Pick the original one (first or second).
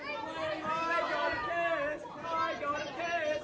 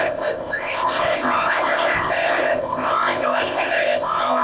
first